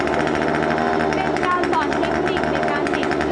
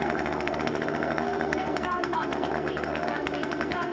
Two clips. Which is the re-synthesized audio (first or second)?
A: second